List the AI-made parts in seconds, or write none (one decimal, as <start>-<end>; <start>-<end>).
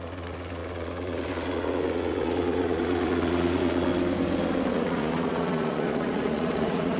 0.0-3.9; 4.7-7.0